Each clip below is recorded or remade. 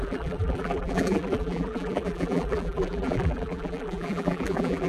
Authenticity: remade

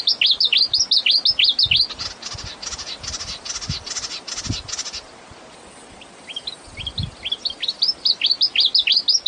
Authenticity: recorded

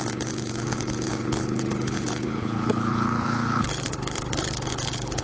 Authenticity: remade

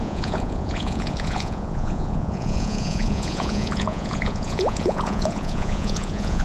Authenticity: remade